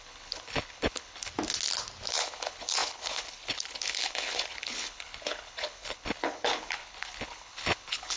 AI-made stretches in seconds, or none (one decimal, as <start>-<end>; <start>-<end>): 0.0-1.3; 2.1-8.2